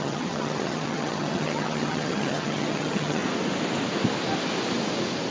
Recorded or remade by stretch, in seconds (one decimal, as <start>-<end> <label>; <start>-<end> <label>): 0.0-3.2 remade; 3.2-5.3 recorded